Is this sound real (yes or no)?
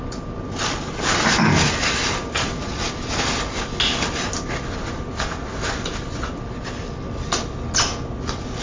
yes